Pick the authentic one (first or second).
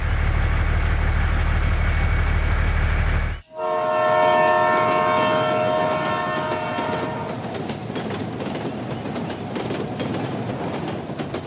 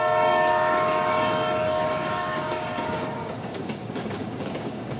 first